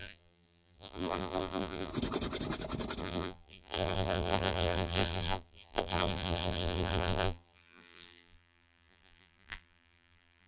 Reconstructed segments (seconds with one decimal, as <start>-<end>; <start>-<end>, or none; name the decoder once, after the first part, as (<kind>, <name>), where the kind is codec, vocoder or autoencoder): 0.0-1.9 (vocoder, BigVGAN v2); 3.0-10.5